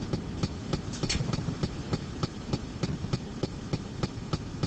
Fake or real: real